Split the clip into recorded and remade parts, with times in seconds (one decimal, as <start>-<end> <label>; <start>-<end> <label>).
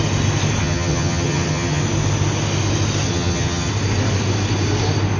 0.0-0.6 recorded; 0.6-1.8 remade; 1.8-3.1 recorded; 3.1-3.7 remade; 3.7-5.2 recorded